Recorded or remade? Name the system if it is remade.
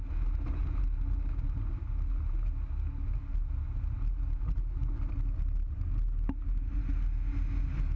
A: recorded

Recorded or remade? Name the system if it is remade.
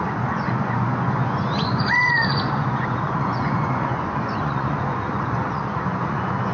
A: remade, vocoder, Vocos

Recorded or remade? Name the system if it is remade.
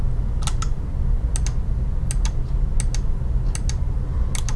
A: recorded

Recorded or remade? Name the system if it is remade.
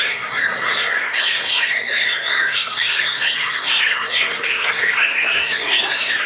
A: remade, codec, SNAC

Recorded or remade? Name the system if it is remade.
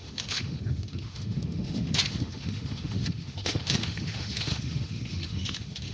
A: remade, autoencoder, DAC-VAE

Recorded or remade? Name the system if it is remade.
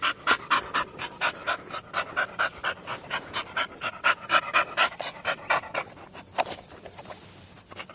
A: recorded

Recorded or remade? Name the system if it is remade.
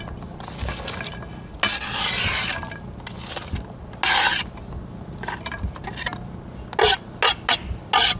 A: recorded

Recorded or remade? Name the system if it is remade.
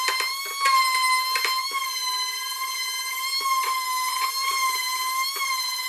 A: recorded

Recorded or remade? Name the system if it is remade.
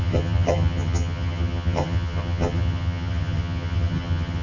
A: remade, vocoder, HiFi-GAN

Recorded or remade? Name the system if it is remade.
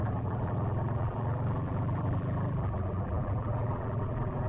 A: remade, vocoder, BigVGAN v2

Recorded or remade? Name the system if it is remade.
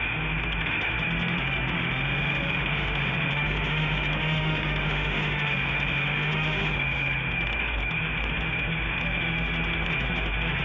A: remade, autoencoder, DAC-VAE